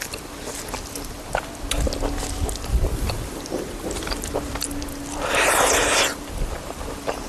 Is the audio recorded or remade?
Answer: recorded